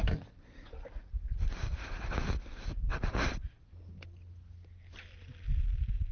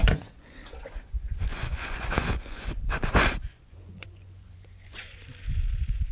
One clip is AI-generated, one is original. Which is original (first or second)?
first